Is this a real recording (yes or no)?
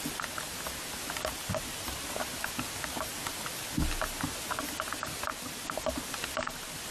yes